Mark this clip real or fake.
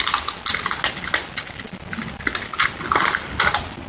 real